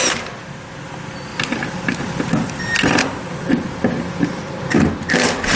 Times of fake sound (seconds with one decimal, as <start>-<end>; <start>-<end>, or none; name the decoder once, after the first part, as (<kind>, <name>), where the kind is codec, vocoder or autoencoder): 1.3-4.7 (vocoder, BigVGAN v2)